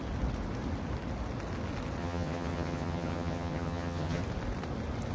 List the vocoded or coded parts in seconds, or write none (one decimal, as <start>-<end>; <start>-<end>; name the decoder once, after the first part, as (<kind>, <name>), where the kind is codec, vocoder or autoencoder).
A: 2.0-4.2 (vocoder, HiFi-GAN)